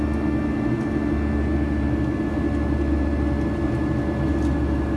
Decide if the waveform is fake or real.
real